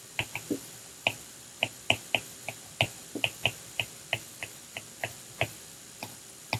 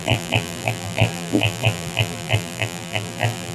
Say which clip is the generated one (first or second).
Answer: second